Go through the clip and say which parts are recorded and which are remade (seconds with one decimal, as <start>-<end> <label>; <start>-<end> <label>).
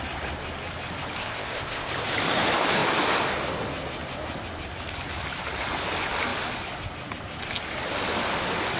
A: 0.0-1.2 recorded; 1.2-1.9 remade; 1.9-8.8 recorded